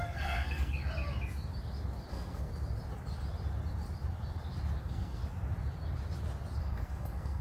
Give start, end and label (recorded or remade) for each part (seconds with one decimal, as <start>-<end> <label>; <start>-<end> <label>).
0.0-0.8 remade; 0.8-2.1 recorded; 2.1-2.5 remade; 2.5-4.8 recorded; 4.8-5.2 remade; 5.2-6.6 recorded; 6.6-7.4 remade